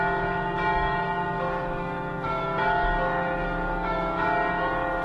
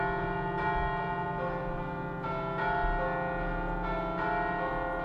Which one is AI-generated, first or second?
first